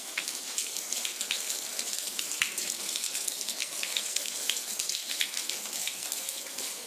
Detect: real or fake fake